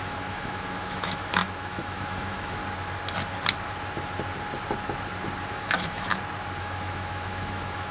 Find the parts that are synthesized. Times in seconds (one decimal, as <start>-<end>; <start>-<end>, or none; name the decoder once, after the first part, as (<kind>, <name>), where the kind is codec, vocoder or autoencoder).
0.0-2.6 (autoencoder, DAC-VAE); 5.5-6.1; 6.6-7.9